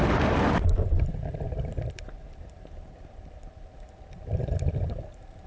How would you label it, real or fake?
fake